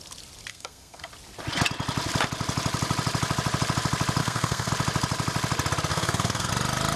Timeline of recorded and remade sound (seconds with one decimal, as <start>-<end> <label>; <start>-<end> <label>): 0.0-0.5 recorded; 0.5-1.1 remade; 1.1-4.2 recorded; 4.2-4.7 remade; 4.7-5.9 recorded; 5.9-6.5 remade; 6.5-7.0 recorded